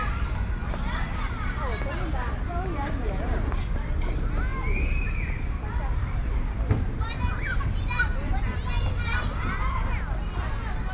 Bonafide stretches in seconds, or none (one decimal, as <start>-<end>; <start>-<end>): 0.0-10.9